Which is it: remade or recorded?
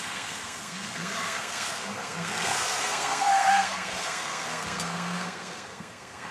remade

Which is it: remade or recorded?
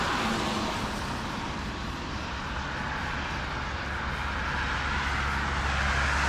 recorded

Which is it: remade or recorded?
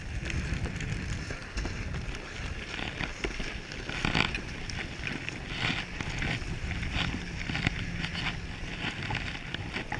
recorded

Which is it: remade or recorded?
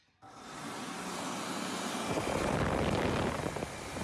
recorded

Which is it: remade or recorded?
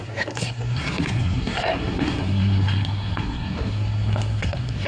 remade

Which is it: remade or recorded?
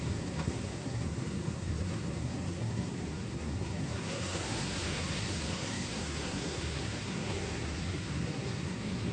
remade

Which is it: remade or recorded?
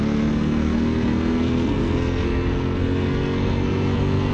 remade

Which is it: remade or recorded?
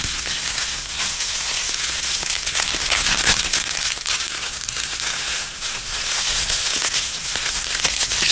remade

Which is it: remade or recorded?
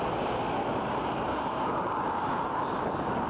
recorded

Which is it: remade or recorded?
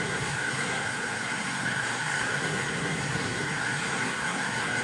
remade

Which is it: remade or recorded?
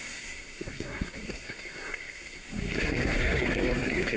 remade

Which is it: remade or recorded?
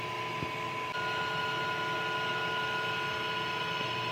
recorded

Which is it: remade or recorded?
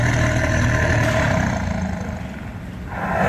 recorded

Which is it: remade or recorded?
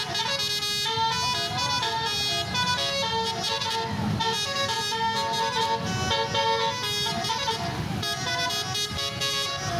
recorded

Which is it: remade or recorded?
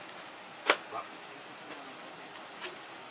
recorded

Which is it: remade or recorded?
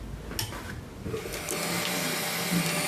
recorded